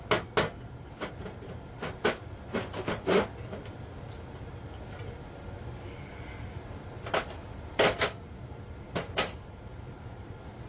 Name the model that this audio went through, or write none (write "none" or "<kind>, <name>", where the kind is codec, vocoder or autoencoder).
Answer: none